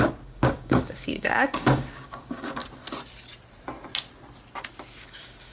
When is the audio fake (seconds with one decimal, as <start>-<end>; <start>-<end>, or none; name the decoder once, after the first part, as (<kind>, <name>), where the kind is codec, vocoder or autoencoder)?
0.0-2.6 (codec, DAC); 5.0-5.5